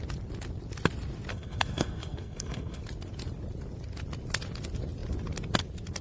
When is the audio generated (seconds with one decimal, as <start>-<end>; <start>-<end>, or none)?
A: 1.3-2.8